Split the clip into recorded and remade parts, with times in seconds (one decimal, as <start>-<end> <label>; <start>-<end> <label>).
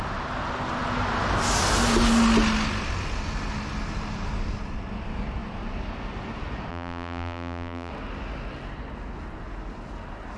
0.0-6.7 recorded; 6.7-7.9 remade; 7.9-10.4 recorded